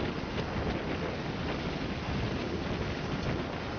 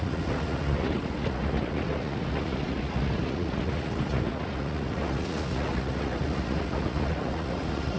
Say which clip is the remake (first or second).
second